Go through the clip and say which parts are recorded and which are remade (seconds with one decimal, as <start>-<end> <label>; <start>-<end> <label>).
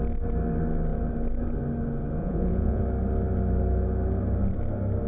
0.0-2.2 recorded; 2.2-2.8 remade; 2.8-5.1 recorded